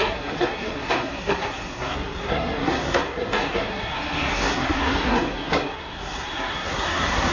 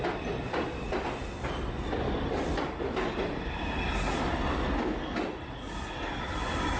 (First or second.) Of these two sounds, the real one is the second